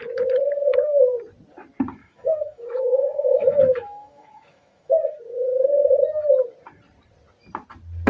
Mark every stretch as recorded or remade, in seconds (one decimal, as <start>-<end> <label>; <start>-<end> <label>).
0.0-2.0 recorded; 2.0-4.9 remade; 4.9-8.1 recorded